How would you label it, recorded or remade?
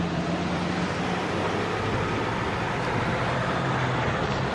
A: recorded